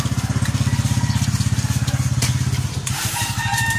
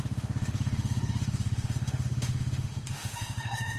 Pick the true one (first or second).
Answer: first